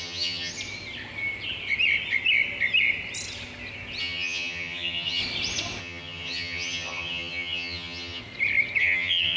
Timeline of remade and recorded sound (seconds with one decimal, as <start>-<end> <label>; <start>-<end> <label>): 0.0-0.5 remade; 0.5-4.0 recorded; 4.0-5.2 remade; 5.2-5.8 recorded; 5.8-8.2 remade; 8.2-8.8 recorded; 8.8-9.4 remade

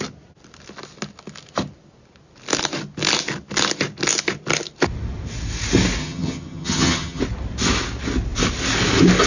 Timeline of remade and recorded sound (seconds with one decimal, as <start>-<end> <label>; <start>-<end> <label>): 0.0-6.0 recorded; 6.0-7.2 remade; 7.2-9.3 recorded

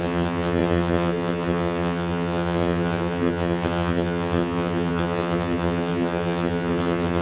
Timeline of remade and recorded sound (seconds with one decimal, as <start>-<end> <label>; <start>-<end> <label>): 0.0-7.2 remade

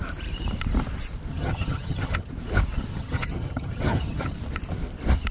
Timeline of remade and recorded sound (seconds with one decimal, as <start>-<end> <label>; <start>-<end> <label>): 0.0-1.3 recorded; 1.3-2.3 remade; 2.3-2.9 recorded; 2.9-4.3 remade; 4.3-5.3 recorded